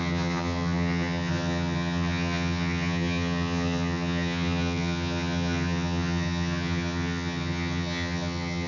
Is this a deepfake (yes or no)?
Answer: yes